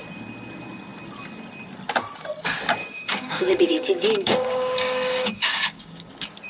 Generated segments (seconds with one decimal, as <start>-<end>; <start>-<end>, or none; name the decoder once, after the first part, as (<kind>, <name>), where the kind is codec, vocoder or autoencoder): 2.8-6.1 (codec, DAC)